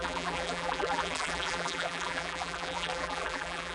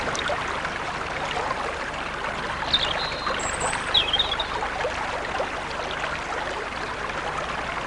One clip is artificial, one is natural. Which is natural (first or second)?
second